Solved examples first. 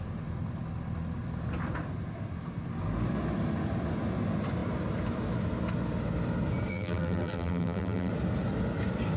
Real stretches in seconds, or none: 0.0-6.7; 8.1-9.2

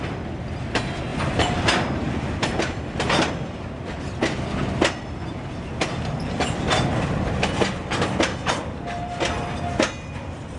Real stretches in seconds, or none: 0.0-1.1; 2.6-10.6